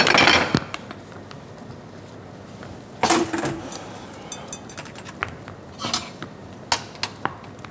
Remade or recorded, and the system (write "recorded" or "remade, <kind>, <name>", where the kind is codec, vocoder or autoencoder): recorded